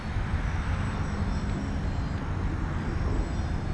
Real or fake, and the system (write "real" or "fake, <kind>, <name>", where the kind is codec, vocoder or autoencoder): real